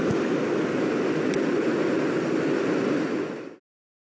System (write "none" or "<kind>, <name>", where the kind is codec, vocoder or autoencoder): none